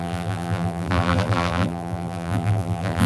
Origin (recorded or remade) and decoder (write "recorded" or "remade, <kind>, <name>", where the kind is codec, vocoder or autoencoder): remade, vocoder, BigVGAN v2